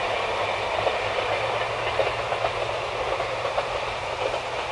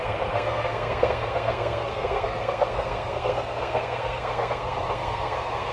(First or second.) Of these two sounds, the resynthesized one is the second